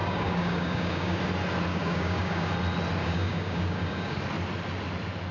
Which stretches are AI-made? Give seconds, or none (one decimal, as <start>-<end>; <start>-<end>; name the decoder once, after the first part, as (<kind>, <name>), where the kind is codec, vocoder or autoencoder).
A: 0.0-1.2 (codec, DAC); 1.7-2.5; 3.0-4.2